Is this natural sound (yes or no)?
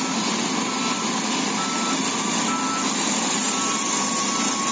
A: yes